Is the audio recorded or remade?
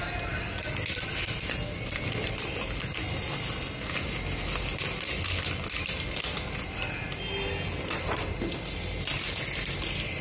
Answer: recorded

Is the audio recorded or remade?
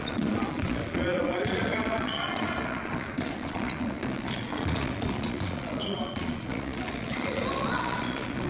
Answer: remade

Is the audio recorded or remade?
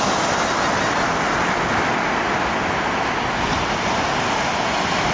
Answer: recorded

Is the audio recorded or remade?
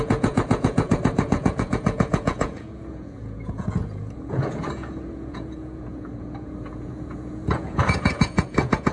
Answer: remade